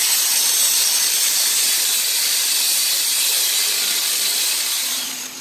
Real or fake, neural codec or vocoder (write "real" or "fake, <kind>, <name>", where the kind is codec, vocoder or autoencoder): fake, vocoder, BigVGAN v2